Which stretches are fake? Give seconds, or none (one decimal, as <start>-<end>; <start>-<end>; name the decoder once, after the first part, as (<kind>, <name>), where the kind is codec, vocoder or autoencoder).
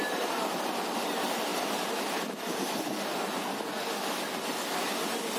1.5-2.8 (vocoder, BigVGAN v2)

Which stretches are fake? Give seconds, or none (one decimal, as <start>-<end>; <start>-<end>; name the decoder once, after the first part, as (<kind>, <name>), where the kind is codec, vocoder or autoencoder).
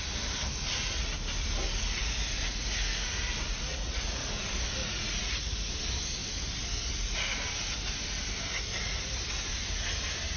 2.0-3.2 (vocoder, Vocos); 3.7-4.3; 4.8-5.7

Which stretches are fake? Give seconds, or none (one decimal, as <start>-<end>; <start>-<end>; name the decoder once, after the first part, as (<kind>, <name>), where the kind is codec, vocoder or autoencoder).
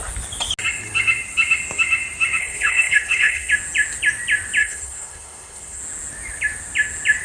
2.4-3.5 (codec, HILCodec); 4.6-5.8